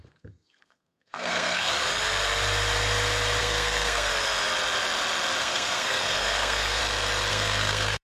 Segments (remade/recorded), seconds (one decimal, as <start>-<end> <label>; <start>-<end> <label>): 0.0-1.7 remade; 1.7-3.4 recorded; 3.4-4.1 remade; 4.1-5.4 recorded; 5.4-6.8 remade; 6.8-7.3 recorded; 7.3-8.0 remade